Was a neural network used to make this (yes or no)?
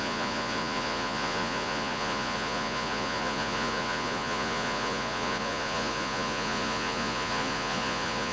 yes